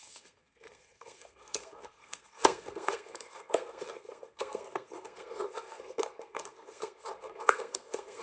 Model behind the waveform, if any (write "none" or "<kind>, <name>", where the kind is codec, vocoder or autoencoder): codec, SNAC